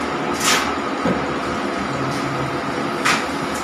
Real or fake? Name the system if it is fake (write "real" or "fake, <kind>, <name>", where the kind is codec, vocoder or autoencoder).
real